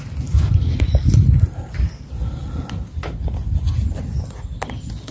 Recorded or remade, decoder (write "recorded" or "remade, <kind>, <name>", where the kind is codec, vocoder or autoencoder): recorded